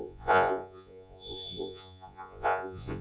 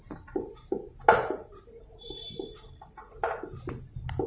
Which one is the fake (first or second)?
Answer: first